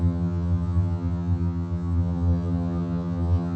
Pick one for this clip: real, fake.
fake